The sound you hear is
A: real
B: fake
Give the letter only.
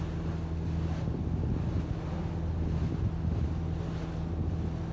A